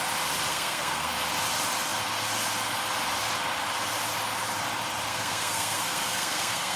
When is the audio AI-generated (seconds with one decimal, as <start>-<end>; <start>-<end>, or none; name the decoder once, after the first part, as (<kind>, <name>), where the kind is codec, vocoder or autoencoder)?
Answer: 0.5-1.1 (codec, SNAC); 5.1-6.8